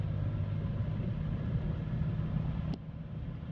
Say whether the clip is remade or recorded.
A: recorded